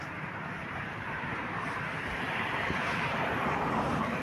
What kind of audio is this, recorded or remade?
remade